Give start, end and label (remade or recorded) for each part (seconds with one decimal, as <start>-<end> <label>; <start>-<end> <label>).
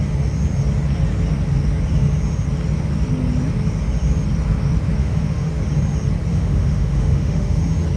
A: 0.0-5.0 recorded; 5.0-5.5 remade; 5.5-6.3 recorded; 6.3-7.6 remade; 7.6-8.0 recorded